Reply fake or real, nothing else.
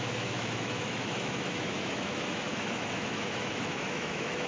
fake